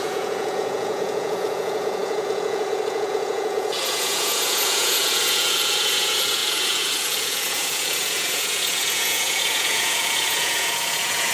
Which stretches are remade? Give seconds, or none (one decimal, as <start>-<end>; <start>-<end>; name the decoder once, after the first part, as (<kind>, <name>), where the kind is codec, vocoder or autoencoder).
0.0-11.3 (vocoder, Vocos)